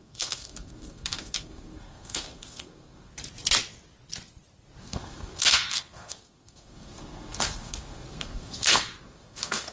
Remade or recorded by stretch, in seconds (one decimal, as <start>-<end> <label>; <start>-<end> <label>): 0.0-3.1 remade; 3.1-4.8 recorded; 4.8-9.7 remade